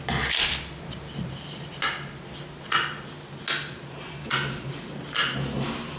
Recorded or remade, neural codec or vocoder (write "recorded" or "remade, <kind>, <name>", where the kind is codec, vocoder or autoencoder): recorded